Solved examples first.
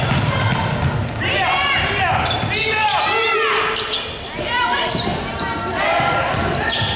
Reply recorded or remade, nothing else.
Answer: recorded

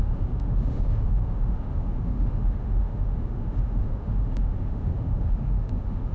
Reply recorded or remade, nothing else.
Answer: remade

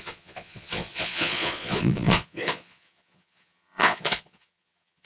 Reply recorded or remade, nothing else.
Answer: remade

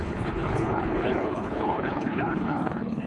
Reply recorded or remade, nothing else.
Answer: remade